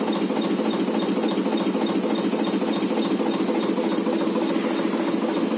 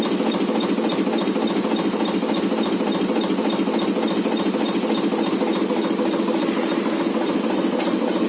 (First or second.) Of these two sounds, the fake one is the second